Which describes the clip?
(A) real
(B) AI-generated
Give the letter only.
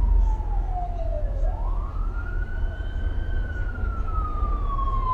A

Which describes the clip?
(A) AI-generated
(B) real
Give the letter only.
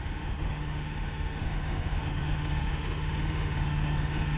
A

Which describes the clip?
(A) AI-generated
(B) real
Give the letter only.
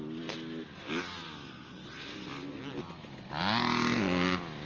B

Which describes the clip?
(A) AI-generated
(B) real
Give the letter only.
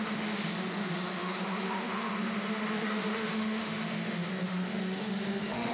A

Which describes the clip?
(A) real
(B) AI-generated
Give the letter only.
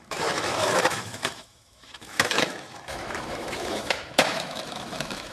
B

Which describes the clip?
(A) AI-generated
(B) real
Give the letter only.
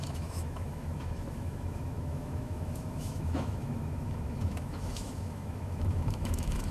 A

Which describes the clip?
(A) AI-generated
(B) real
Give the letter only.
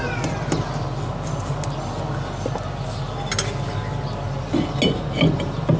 B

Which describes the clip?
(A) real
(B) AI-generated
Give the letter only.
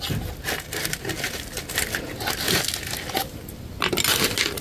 A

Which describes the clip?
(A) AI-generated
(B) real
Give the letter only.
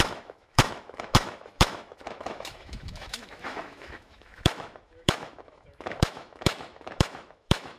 A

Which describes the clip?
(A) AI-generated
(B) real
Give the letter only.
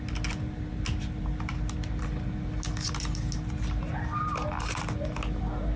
B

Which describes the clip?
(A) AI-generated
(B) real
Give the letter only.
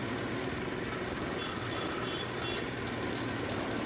B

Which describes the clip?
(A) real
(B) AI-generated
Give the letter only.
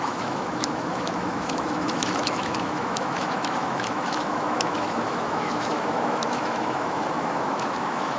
B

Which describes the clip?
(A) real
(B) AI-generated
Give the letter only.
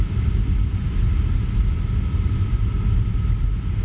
A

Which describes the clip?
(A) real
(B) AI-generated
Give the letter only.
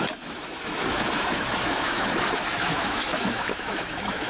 B